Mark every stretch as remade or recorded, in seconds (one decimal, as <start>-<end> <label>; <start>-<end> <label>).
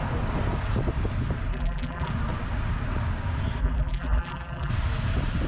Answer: 0.0-1.5 recorded; 1.5-2.1 remade; 2.1-3.6 recorded; 3.6-4.7 remade; 4.7-5.5 recorded